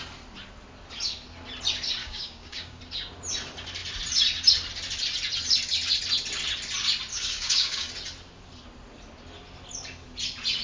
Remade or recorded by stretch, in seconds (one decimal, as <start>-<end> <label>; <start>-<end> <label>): 0.0-2.0 recorded; 2.0-2.8 remade; 2.8-7.1 recorded; 7.1-7.9 remade; 7.9-10.6 recorded